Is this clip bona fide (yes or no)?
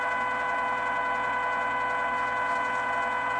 yes